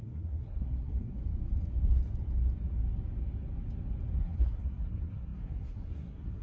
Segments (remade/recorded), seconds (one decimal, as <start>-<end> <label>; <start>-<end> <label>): 0.0-1.2 remade; 1.2-4.2 recorded; 4.2-6.4 remade